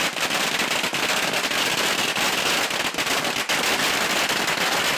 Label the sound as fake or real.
real